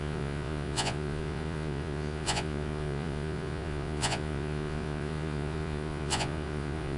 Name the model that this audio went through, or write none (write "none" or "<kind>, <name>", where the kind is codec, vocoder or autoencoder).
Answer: vocoder, Vocos